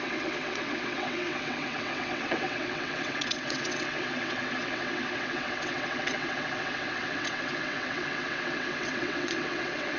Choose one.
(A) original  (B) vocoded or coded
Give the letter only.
B